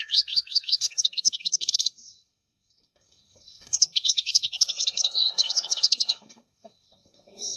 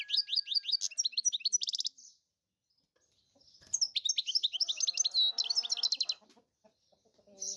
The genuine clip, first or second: second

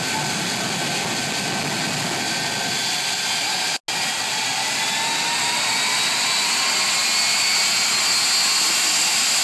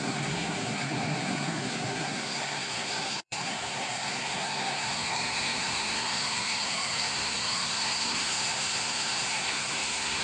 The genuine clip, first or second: first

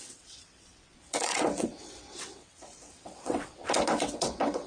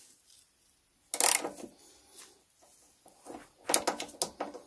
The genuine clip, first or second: second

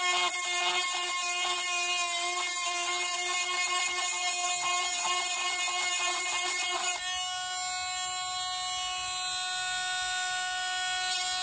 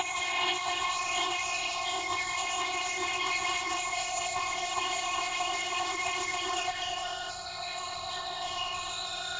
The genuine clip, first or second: first